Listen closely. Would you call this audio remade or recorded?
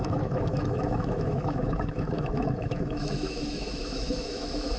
remade